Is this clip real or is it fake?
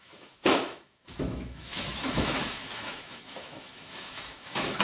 fake